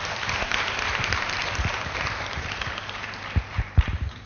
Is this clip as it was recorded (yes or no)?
no